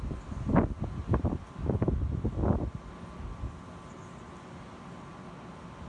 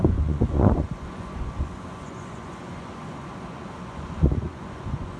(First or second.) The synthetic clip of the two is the second